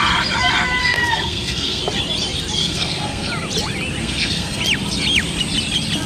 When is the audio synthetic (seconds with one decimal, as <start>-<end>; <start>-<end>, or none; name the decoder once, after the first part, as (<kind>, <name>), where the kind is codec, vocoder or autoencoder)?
0.8-1.8 (codec, SNAC); 2.6-3.3; 4.0-4.6